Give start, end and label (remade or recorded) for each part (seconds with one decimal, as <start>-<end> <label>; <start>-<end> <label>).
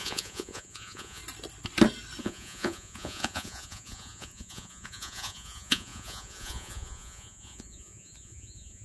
0.0-1.2 remade; 1.2-2.2 recorded; 2.2-8.8 remade